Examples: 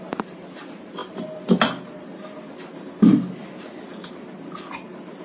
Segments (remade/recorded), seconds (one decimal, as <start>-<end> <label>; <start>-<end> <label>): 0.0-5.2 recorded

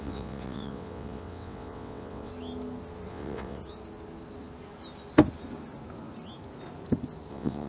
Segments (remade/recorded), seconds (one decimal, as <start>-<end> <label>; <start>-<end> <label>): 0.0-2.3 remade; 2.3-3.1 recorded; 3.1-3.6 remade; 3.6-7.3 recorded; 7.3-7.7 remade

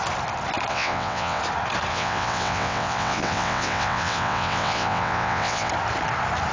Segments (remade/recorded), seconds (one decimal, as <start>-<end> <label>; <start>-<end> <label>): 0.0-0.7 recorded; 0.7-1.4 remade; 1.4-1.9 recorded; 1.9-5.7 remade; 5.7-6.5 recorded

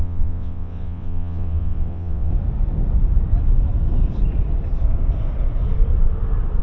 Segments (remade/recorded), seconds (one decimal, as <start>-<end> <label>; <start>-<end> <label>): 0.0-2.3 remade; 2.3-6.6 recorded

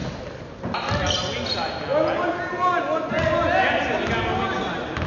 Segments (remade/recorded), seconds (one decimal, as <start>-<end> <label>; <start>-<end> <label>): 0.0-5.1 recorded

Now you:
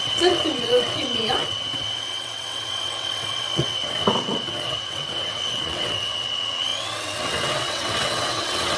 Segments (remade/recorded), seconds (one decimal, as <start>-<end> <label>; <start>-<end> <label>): 0.0-8.8 remade

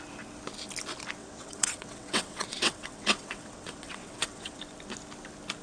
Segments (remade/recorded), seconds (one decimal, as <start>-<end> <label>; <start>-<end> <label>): 0.0-1.2 recorded; 1.2-4.6 remade; 4.6-5.6 recorded

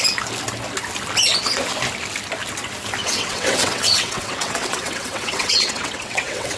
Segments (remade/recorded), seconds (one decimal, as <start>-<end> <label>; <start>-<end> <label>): 0.0-3.0 recorded; 3.0-6.6 remade